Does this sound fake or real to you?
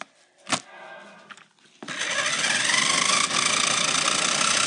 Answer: real